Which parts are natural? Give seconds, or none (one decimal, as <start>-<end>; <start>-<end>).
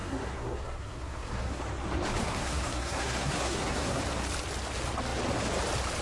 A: 1.6-2.2; 4.0-6.0